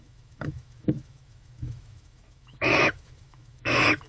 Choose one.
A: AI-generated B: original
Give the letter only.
A